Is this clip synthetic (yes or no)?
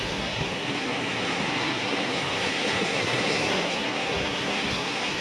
yes